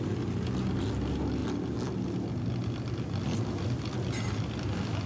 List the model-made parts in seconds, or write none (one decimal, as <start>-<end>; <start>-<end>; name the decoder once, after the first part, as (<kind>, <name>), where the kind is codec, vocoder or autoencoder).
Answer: none

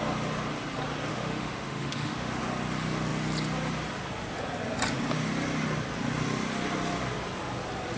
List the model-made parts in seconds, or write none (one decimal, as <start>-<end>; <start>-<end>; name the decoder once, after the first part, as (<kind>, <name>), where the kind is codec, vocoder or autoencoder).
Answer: 1.1-2.4 (autoencoder, DAC-VAE)